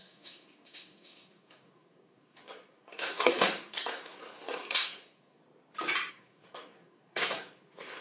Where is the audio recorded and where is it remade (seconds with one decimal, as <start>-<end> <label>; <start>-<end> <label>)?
0.0-5.4 remade; 5.4-6.1 recorded; 6.1-8.0 remade